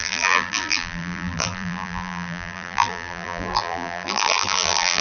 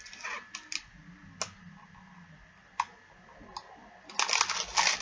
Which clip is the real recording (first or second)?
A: second